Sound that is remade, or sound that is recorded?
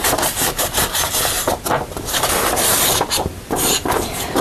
remade